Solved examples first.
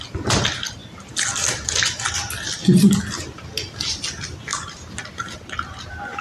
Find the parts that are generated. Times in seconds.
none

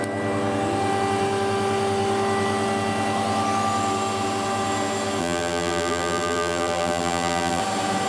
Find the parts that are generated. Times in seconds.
5.2-7.6 (vocoder, BigVGAN v2)